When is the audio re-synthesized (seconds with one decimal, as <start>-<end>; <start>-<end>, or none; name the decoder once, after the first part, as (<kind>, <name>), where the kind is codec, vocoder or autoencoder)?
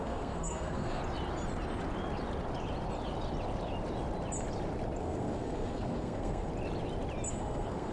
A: 0.0-1.0 (codec, SNAC); 5.0-6.5; 7.3-7.9